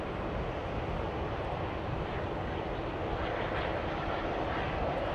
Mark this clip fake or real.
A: real